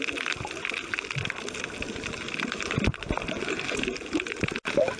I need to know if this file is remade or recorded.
recorded